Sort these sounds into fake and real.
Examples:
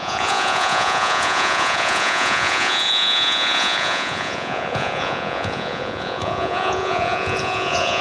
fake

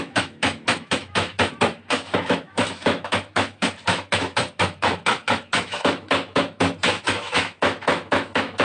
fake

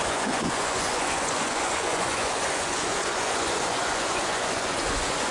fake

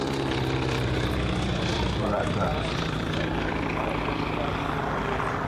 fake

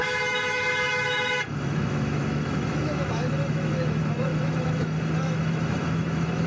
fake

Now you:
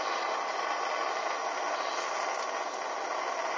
real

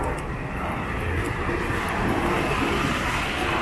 real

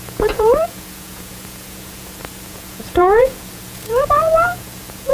fake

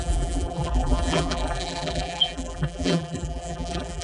fake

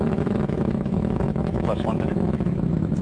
fake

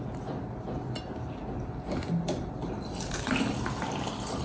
real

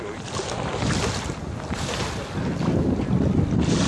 real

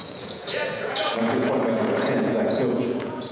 fake